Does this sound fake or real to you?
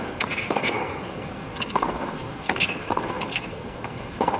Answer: fake